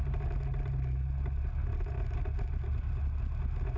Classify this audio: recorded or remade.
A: recorded